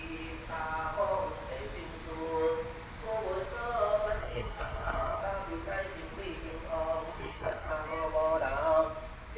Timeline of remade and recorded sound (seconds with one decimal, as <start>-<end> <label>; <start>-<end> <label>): 0.0-4.2 recorded; 4.2-5.2 remade; 5.2-7.1 recorded; 7.1-7.7 remade; 7.7-9.4 recorded

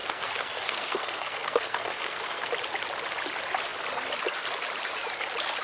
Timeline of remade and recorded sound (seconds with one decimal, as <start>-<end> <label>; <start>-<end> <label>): 0.0-2.5 remade; 2.5-5.6 recorded